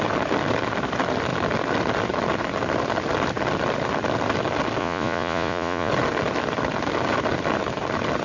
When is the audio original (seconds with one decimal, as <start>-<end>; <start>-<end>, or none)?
0.0-4.8; 5.9-8.2